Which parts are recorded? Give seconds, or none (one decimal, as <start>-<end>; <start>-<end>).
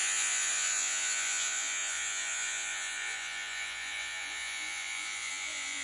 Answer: none